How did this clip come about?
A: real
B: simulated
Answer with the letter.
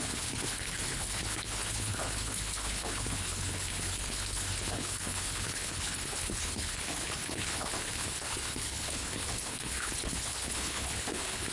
B